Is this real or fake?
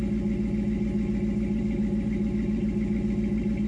real